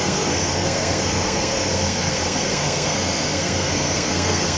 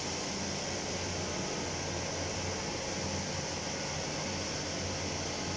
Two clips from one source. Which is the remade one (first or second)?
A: first